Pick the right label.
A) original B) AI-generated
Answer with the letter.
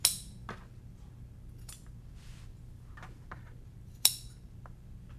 A